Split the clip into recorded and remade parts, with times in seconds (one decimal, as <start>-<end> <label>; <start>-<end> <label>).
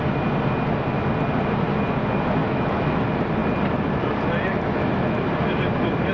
0.0-2.4 recorded; 2.4-3.0 remade; 3.0-4.5 recorded; 4.5-5.2 remade; 5.2-6.1 recorded